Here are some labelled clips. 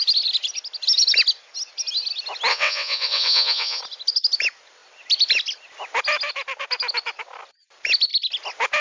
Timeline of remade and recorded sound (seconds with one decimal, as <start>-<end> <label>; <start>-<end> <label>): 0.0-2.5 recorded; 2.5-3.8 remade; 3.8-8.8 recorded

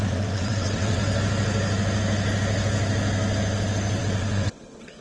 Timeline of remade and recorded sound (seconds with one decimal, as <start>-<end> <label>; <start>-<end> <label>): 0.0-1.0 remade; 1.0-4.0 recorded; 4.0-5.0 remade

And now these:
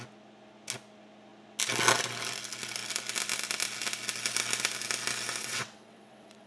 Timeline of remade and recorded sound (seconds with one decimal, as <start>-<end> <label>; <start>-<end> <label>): 0.0-5.4 recorded; 5.4-6.5 remade

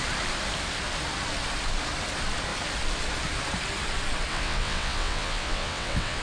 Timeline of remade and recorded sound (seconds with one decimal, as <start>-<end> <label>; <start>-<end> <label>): 0.0-4.3 recorded; 4.3-6.2 remade

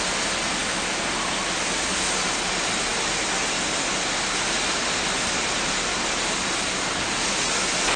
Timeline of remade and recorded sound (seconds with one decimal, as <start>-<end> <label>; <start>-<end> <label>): 0.0-8.0 recorded

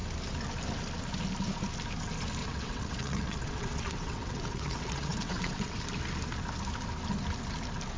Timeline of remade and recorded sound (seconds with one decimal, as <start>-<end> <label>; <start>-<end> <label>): 0.0-2.4 recorded; 2.4-5.7 remade; 5.7-8.0 recorded

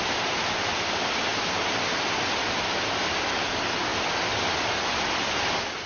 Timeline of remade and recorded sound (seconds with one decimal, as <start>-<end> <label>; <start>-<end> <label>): 0.0-5.9 recorded